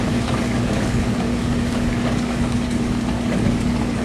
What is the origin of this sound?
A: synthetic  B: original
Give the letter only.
A